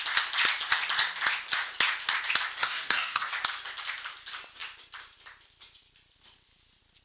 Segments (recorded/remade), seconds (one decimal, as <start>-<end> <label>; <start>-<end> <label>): 0.0-2.6 recorded; 2.6-3.3 remade; 3.3-7.0 recorded